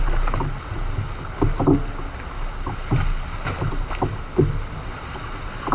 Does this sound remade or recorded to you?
recorded